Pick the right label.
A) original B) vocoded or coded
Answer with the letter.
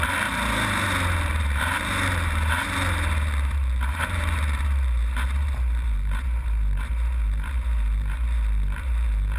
B